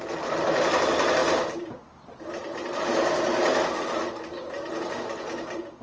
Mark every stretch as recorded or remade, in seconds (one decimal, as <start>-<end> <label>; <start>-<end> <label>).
0.0-5.8 recorded